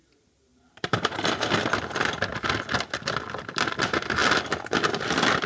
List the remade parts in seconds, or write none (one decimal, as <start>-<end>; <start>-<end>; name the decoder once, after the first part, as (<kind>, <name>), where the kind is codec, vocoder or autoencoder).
0.5-1.5 (vocoder, BigVGAN v2)